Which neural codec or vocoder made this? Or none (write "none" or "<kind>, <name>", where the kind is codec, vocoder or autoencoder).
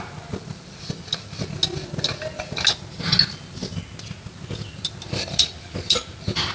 none